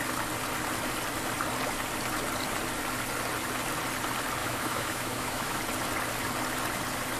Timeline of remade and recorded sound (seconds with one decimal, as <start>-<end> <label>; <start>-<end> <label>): 0.0-4.4 recorded; 4.4-5.6 remade; 5.6-7.2 recorded